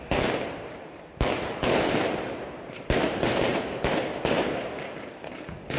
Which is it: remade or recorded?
remade